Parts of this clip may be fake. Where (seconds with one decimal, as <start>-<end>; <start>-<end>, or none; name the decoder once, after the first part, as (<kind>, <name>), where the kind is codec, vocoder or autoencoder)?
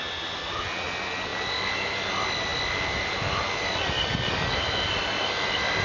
none